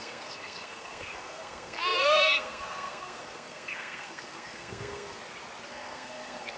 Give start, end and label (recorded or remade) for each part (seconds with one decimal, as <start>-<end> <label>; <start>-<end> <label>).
0.0-5.2 remade; 5.2-5.7 recorded; 5.7-6.6 remade